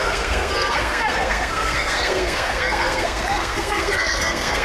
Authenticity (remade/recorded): remade